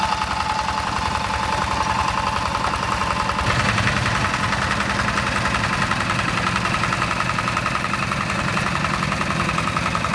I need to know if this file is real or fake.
real